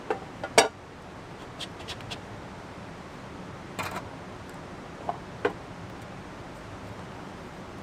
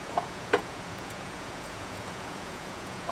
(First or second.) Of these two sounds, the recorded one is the first